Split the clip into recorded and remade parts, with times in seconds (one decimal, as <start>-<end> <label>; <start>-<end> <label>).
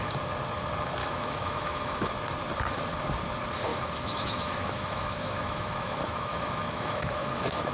0.0-1.0 recorded; 1.0-2.1 remade; 2.1-3.7 recorded; 3.7-7.7 remade